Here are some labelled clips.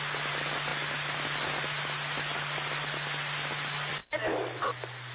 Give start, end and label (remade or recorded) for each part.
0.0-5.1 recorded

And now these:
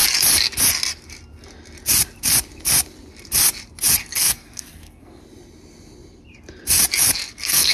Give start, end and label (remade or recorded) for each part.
0.0-4.0 recorded; 4.0-5.2 remade; 5.2-7.3 recorded; 7.3-7.7 remade

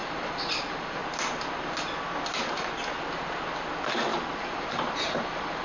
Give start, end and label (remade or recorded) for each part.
0.0-1.0 remade; 1.0-4.4 recorded; 4.4-5.6 remade

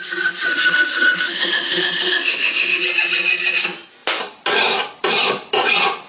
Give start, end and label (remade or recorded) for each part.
0.0-0.5 recorded; 0.5-2.8 remade; 2.8-6.1 recorded

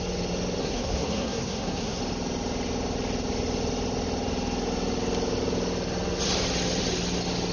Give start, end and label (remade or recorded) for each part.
0.0-0.6 recorded; 0.6-2.0 remade; 2.0-7.5 recorded